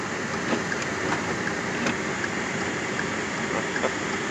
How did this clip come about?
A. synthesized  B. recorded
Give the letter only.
B